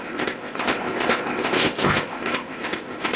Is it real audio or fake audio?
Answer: fake